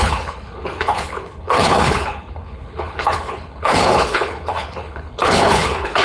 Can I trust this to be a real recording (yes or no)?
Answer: no